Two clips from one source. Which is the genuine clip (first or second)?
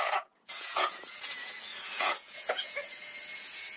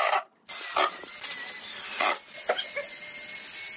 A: second